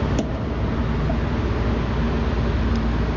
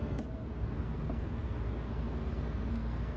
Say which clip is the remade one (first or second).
second